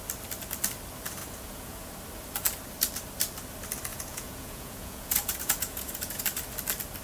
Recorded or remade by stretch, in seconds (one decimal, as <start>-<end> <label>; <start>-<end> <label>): 0.0-1.2 recorded; 1.2-1.9 remade; 1.9-3.9 recorded; 3.9-6.2 remade; 6.2-7.0 recorded